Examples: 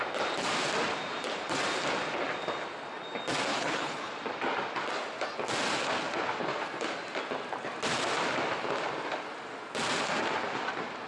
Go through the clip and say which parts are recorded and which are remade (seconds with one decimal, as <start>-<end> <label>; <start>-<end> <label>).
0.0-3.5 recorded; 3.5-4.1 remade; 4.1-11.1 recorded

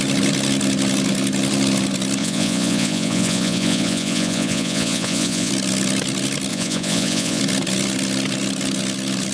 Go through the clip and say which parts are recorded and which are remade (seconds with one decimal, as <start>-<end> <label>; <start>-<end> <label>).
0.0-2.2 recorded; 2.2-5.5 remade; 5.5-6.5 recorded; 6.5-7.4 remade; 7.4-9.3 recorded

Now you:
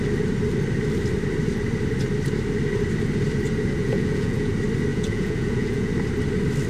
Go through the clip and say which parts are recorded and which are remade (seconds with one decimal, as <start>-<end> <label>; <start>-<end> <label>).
0.0-3.8 recorded; 3.8-4.5 remade; 4.5-4.9 recorded; 4.9-5.9 remade; 5.9-6.7 recorded